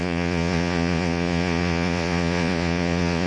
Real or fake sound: fake